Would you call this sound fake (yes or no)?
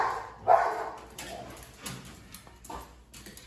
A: no